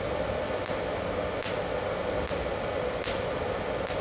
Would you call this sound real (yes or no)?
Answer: yes